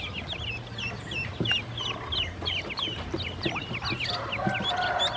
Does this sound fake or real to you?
real